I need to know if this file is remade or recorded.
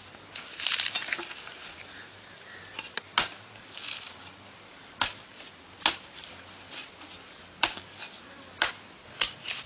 recorded